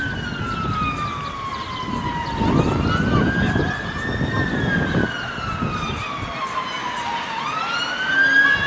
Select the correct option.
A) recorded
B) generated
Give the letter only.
A